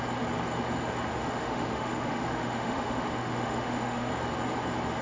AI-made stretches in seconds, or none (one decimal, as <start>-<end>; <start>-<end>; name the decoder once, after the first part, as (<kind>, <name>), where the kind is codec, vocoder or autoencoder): 1.1-4.1 (autoencoder, DAC-VAE)